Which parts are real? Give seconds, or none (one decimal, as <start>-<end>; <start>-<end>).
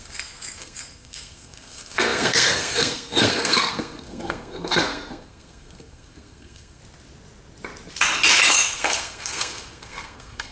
6.8-8.5